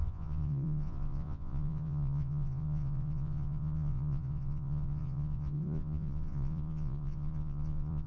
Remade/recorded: remade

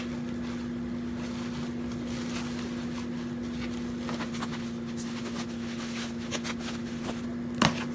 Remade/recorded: recorded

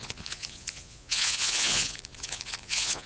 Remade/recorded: remade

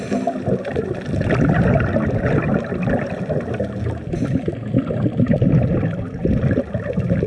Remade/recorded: recorded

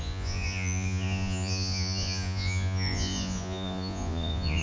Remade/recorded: remade